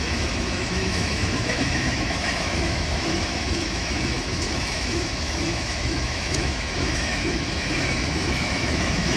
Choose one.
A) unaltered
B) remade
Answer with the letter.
B